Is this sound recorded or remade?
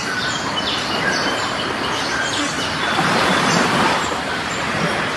remade